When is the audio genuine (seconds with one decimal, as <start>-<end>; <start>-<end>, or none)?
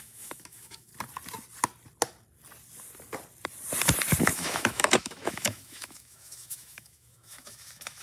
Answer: 0.9-4.2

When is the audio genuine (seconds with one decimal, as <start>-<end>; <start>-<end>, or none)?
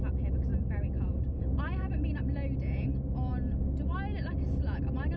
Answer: 0.0-5.2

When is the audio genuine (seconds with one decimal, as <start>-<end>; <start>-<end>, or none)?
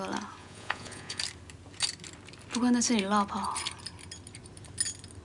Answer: 0.0-0.4; 1.2-5.2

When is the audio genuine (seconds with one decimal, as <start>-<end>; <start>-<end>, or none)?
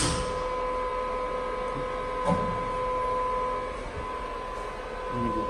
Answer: 0.0-5.5